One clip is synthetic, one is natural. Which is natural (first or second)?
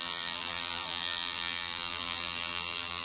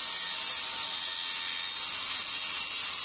second